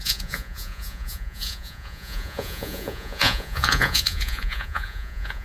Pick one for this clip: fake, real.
fake